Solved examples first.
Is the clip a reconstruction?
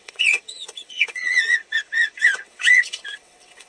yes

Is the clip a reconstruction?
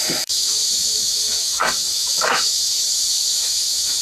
yes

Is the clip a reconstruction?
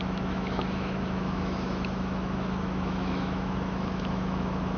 yes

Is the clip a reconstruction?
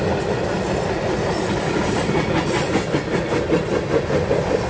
no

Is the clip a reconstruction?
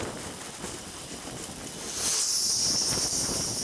no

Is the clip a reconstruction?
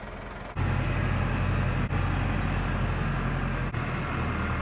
no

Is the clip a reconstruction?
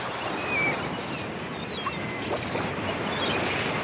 no